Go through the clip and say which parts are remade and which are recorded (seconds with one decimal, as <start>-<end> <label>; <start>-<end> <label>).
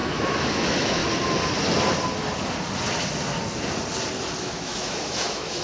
0.0-1.0 remade; 1.0-4.4 recorded; 4.4-5.6 remade